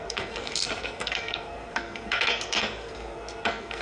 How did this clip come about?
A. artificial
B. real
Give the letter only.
A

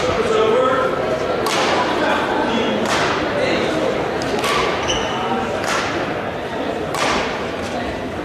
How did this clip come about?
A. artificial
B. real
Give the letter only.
B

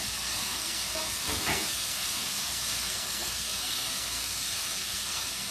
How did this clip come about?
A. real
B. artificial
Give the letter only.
B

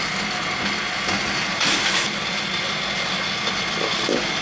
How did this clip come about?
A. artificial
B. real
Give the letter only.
B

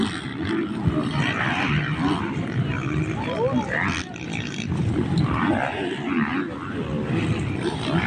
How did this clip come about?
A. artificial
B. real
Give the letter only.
B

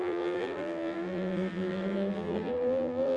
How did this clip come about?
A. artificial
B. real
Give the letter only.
A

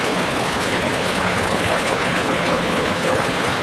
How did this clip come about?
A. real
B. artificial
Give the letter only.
B